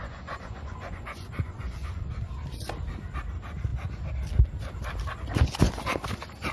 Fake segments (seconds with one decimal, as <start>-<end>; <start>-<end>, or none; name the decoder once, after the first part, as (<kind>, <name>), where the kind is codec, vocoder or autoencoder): 0.0-2.1 (vocoder, Vocos)